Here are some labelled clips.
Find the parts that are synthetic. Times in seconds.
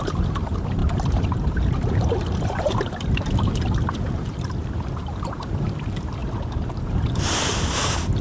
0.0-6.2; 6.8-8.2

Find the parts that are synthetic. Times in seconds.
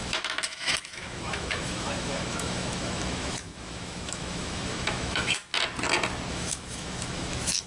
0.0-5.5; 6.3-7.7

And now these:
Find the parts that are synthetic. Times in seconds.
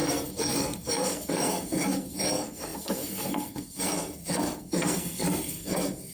0.0-6.1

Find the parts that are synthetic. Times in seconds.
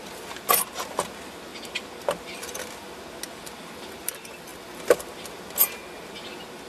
none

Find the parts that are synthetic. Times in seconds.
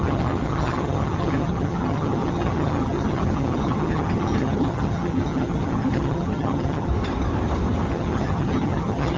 0.0-6.9; 7.9-9.2